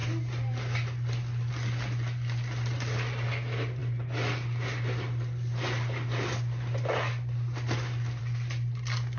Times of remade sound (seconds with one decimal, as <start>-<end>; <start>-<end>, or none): none